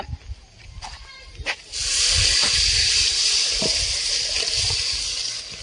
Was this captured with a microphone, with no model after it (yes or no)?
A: yes